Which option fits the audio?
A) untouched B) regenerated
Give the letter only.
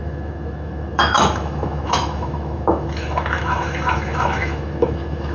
B